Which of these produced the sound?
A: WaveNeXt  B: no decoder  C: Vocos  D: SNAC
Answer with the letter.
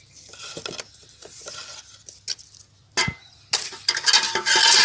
B